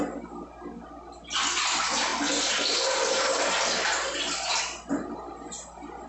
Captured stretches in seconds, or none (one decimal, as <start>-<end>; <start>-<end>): 0.0-6.1